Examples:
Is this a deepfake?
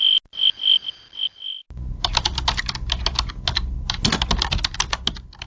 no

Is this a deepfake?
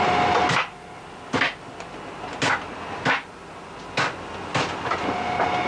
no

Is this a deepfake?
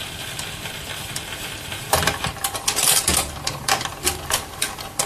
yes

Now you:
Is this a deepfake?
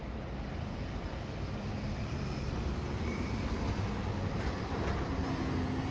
no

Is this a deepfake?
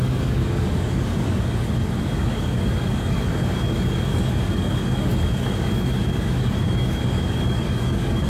yes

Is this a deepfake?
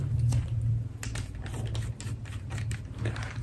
no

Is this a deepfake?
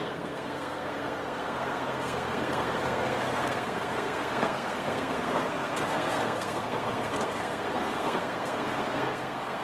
yes